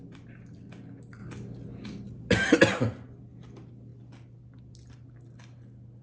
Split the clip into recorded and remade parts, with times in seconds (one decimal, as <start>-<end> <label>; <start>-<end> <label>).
0.0-6.0 recorded